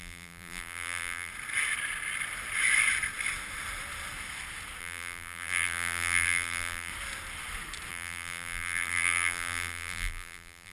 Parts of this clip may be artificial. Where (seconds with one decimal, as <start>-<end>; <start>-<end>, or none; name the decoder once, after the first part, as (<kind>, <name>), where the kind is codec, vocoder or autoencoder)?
0.0-1.3 (vocoder, BigVGAN v2); 4.8-6.9; 7.9-10.7